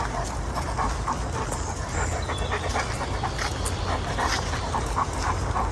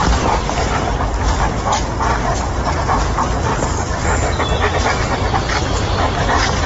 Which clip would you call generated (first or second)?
second